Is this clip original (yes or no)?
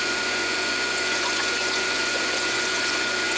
no